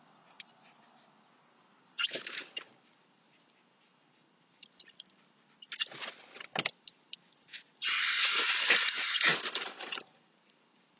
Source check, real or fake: real